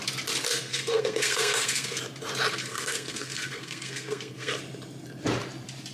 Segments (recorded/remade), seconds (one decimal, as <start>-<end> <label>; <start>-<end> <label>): 0.0-0.5 recorded; 0.5-2.0 remade; 2.0-2.6 recorded; 2.6-4.6 remade; 4.6-5.9 recorded